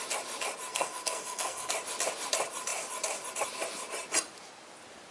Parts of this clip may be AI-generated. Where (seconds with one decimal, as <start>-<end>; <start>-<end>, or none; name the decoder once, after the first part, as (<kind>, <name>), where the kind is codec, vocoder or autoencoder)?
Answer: 0.7-1.7 (codec, SNAC)

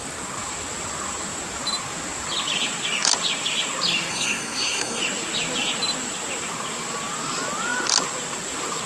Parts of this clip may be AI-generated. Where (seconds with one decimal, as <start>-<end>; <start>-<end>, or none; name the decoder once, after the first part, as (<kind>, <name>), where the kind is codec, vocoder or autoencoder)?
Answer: 4.1-5.0 (codec, SNAC)

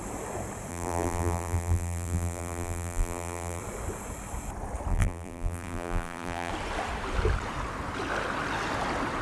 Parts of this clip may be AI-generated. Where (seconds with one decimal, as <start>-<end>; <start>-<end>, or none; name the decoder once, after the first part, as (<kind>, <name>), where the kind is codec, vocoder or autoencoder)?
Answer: 0.7-3.6 (vocoder, BigVGAN v2); 4.9-6.5

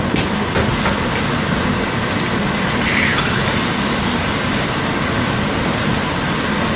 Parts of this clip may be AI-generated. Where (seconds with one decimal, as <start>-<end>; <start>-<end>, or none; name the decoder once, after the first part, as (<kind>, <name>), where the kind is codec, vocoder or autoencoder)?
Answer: none

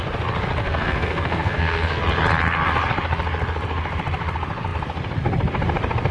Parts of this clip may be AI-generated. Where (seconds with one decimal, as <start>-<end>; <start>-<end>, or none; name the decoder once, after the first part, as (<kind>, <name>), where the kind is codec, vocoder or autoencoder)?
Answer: 0.6-2.0 (codec, SNAC)

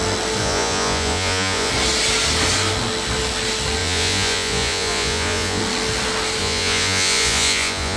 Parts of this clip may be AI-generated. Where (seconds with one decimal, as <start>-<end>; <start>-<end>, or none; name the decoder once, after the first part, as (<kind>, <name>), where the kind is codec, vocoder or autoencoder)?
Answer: 0.4-1.7 (vocoder, Vocos); 3.8-5.6; 6.4-8.0

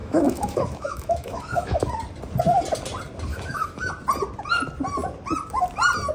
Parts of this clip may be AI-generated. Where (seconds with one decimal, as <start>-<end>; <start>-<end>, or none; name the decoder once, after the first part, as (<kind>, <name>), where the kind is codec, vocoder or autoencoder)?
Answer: 0.0-1.9 (autoencoder, DAC-VAE); 3.3-3.9